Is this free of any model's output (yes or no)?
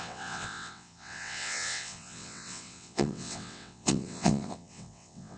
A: no